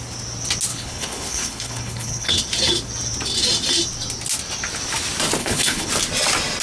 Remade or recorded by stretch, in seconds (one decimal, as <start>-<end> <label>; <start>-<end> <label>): 0.0-0.7 recorded; 0.7-2.4 remade; 2.4-5.4 recorded; 5.4-5.9 remade; 5.9-6.6 recorded